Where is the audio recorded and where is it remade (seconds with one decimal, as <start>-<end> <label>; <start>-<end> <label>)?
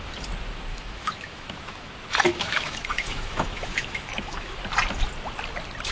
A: 0.0-0.7 recorded; 0.7-1.9 remade; 1.9-2.3 recorded; 2.3-4.6 remade; 4.6-5.9 recorded